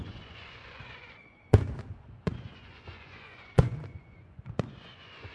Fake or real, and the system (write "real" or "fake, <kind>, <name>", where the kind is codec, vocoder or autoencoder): fake, vocoder, Vocos